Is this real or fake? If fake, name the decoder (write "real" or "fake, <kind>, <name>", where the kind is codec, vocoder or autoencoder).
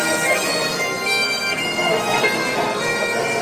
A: fake, codec, SNAC